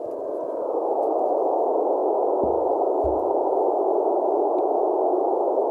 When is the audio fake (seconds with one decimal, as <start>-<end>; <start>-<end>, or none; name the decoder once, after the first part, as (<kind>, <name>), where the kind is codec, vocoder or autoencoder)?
none